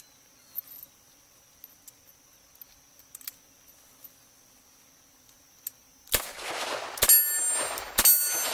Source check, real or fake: real